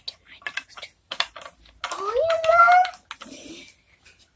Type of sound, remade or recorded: recorded